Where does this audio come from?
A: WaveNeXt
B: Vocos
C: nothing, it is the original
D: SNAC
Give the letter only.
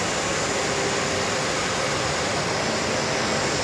C